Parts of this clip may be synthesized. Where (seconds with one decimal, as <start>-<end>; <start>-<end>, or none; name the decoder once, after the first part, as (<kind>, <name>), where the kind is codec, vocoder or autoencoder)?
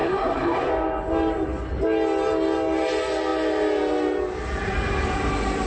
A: 0.0-0.7 (codec, SNAC)